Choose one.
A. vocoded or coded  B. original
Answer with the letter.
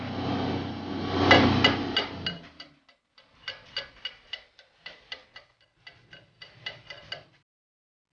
B